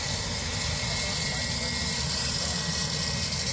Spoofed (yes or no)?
no